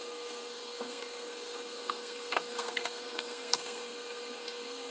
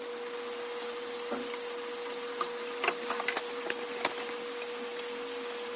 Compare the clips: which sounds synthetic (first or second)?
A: first